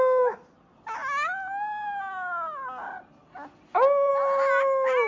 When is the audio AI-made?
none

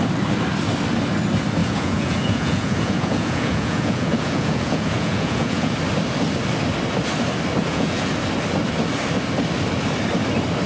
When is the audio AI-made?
1.6-5.7 (vocoder, Vocos); 7.6-8.1

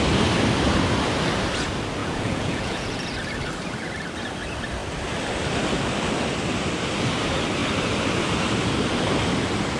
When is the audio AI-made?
2.0-3.1 (vocoder, Vocos)

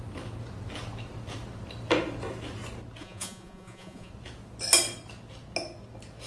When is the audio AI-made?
3.0-4.1 (vocoder, Vocos)

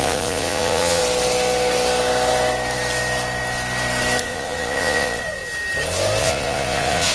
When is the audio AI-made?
0.0-1.0 (vocoder, Vocos); 4.2-5.4; 6.2-7.1

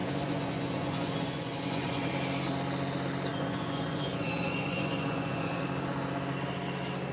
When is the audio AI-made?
0.0-2.1 (vocoder, Vocos); 3.3-5.6

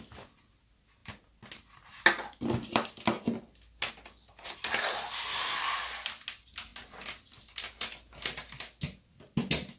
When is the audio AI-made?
none

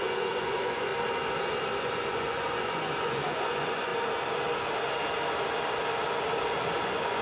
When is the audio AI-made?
0.0-0.9 (vocoder, Vocos); 1.8-3.9; 6.8-7.2